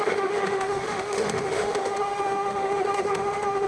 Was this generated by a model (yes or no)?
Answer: yes